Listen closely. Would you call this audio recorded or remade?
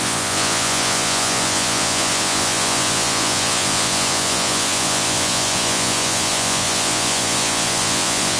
remade